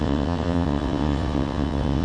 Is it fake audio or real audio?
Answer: fake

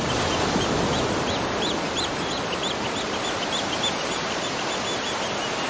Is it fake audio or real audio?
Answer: real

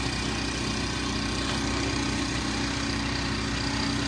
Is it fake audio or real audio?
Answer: real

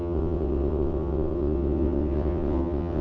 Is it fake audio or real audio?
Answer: fake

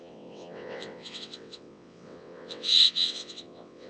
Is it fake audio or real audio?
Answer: fake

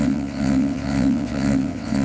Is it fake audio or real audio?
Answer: fake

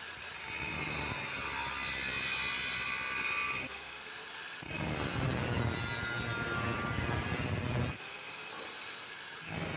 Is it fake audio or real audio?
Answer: real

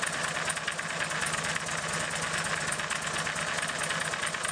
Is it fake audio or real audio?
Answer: real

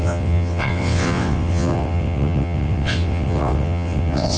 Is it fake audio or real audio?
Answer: fake